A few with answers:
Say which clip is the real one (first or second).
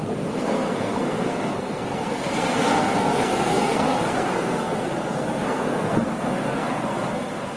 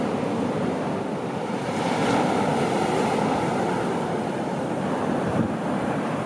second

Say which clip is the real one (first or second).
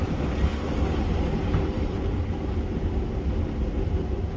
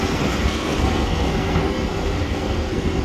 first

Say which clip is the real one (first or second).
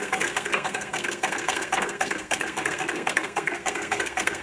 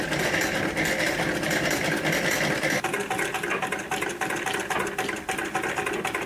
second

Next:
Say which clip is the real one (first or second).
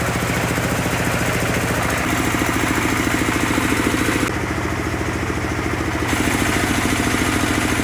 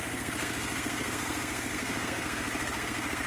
first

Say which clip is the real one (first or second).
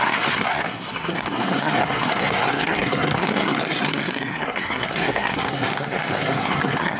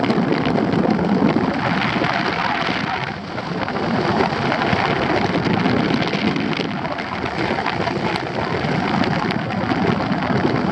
second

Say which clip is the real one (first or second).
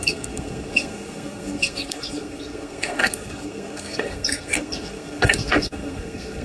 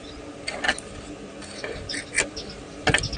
second